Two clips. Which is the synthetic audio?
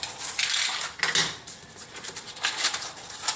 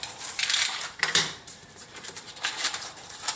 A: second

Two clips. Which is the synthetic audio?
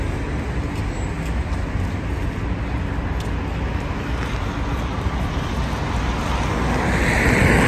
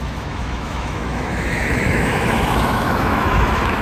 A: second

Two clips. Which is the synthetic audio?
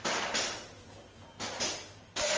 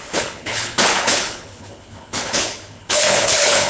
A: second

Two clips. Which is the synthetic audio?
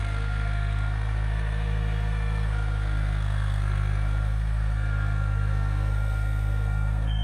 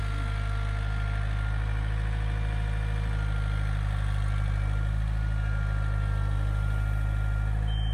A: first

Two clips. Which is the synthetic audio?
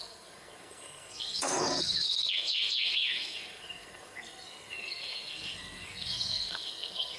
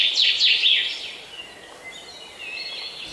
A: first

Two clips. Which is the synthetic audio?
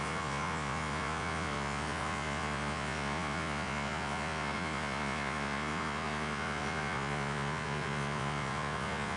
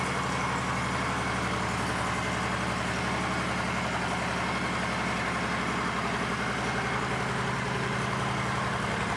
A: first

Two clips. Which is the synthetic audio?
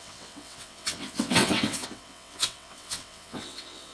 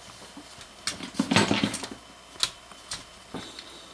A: first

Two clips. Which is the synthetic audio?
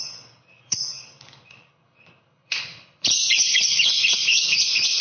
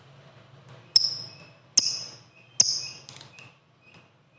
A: first